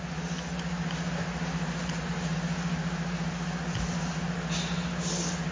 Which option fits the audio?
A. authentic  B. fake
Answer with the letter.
A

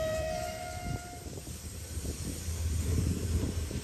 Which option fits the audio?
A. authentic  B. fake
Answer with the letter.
B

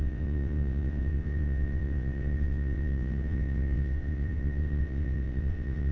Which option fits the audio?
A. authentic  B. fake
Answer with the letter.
B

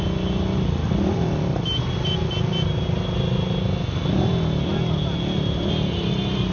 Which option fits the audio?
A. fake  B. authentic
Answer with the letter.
B